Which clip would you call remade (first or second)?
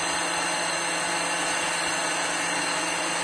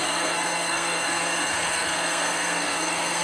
second